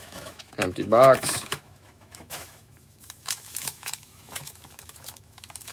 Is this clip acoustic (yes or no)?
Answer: no